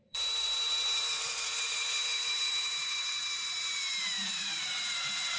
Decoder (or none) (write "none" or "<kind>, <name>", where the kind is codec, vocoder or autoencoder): vocoder, BigVGAN v2